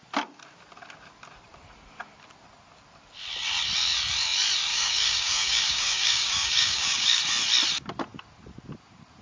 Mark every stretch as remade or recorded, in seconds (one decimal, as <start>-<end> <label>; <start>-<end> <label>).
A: 0.0-4.7 recorded; 4.7-7.2 remade; 7.2-9.2 recorded